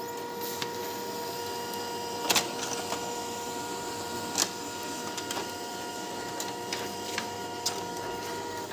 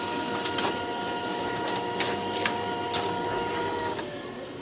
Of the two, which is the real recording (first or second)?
first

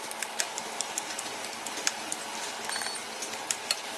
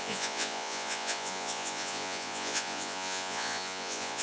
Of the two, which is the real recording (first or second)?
first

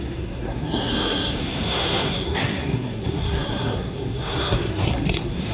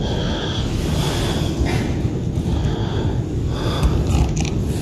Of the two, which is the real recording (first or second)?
second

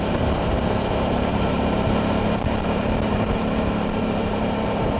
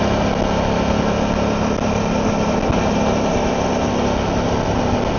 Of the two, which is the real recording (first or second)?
second